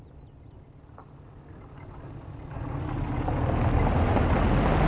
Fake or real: real